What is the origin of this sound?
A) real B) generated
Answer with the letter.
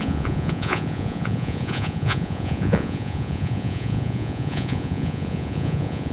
B